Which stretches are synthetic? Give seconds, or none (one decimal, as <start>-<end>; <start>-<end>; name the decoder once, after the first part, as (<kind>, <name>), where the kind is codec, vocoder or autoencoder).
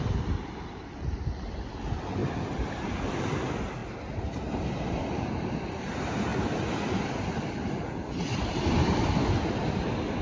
none